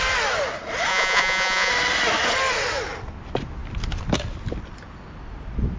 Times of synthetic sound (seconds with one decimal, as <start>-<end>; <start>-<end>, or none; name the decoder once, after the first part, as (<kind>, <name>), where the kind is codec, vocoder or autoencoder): 0.9-1.7 (vocoder, Vocos)